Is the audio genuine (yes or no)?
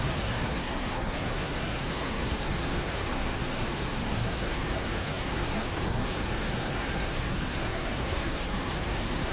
no